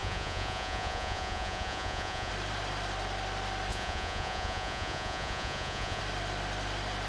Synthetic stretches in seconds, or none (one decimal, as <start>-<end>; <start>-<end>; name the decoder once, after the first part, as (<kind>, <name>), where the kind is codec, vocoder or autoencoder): 0.0-2.3 (vocoder, Vocos); 3.7-6.0